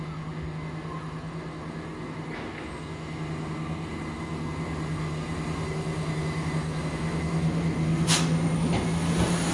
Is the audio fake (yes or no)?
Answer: no